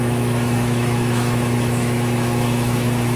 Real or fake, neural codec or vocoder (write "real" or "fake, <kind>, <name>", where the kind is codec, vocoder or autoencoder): fake, autoencoder, DAC-VAE